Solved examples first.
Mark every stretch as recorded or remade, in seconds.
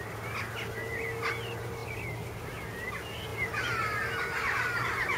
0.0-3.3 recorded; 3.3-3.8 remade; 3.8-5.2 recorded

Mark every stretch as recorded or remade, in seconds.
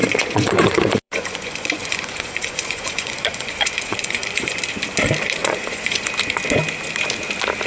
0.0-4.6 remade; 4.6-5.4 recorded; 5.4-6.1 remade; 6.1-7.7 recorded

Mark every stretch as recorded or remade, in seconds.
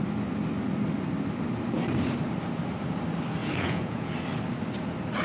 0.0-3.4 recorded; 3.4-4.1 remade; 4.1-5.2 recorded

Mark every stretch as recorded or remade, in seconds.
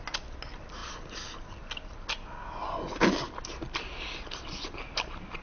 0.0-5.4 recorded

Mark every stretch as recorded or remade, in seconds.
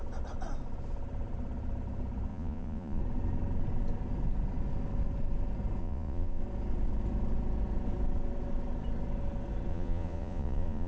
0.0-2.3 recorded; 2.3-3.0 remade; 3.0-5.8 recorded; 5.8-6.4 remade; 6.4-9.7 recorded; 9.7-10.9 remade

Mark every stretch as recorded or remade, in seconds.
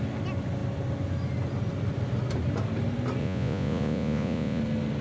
0.0-3.2 recorded; 3.2-4.6 remade; 4.6-5.0 recorded